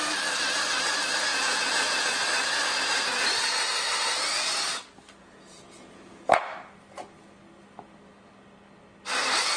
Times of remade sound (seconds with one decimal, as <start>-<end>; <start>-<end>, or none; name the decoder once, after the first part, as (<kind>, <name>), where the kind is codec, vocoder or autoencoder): 1.3-2.2 (vocoder, Vocos); 5.2-6.4